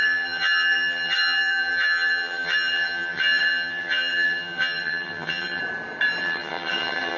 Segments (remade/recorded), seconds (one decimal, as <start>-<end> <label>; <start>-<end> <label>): 0.0-5.6 remade; 5.6-6.2 recorded; 6.2-7.2 remade